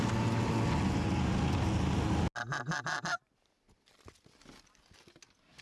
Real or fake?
real